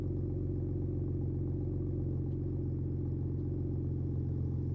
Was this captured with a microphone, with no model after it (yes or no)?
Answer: yes